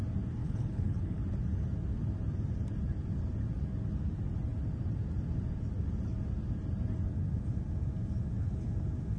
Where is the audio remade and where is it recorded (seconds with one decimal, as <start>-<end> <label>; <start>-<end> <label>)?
0.0-0.4 recorded; 0.4-1.2 remade; 1.2-9.2 recorded